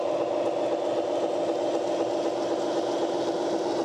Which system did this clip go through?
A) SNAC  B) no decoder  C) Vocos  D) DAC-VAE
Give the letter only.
B